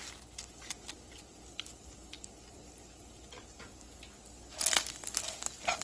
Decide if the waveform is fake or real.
real